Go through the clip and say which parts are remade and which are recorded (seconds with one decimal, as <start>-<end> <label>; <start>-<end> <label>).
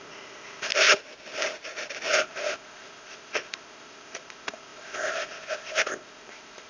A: 0.0-0.7 remade; 0.7-2.1 recorded; 2.1-6.7 remade